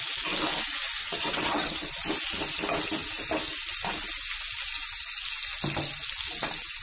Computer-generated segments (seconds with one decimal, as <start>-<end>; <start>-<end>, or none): 1.0-1.9